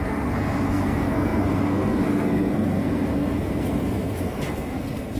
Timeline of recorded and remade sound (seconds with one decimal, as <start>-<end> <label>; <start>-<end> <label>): 0.0-5.2 remade